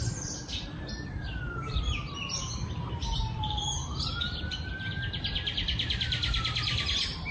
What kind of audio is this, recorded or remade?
recorded